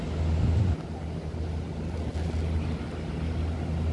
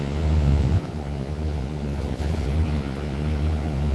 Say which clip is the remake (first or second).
second